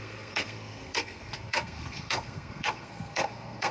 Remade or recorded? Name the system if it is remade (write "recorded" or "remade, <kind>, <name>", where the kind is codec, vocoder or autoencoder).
remade, codec, SNAC